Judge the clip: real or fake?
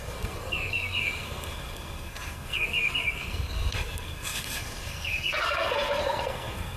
fake